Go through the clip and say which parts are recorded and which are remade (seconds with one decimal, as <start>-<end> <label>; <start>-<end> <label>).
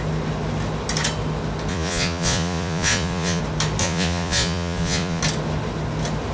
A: 0.0-1.7 recorded; 1.7-3.4 remade; 3.4-3.8 recorded; 3.8-5.2 remade; 5.2-6.3 recorded